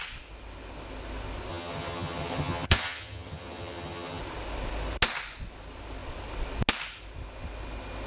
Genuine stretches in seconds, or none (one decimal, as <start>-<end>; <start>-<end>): 0.0-1.5; 4.2-8.1